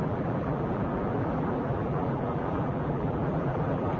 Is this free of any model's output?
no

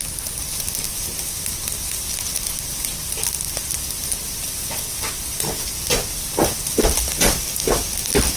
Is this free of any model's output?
yes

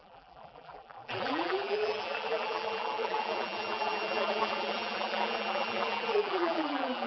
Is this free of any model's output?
no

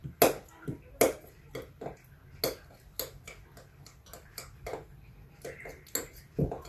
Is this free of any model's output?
yes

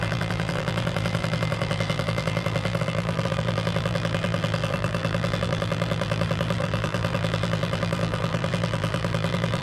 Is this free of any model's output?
no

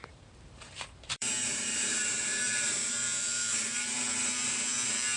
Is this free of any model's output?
no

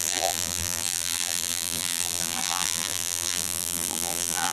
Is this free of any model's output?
no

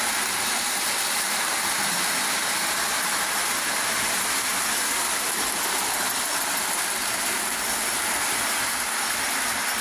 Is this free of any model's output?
yes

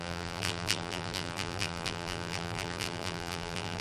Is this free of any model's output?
no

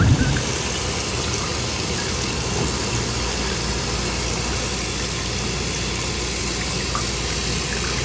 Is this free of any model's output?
yes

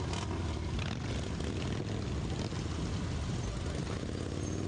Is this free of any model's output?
yes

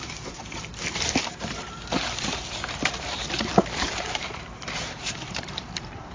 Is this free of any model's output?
no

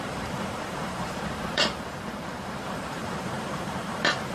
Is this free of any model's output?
no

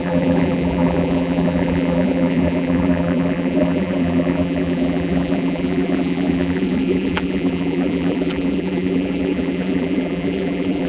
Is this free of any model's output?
no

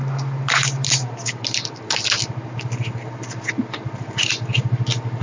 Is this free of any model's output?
yes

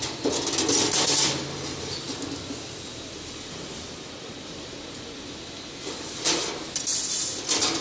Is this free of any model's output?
yes